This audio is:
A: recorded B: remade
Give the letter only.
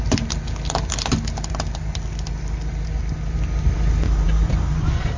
A